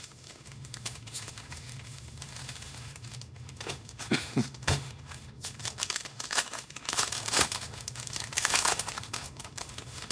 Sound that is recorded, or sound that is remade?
remade